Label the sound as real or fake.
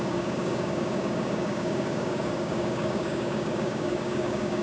fake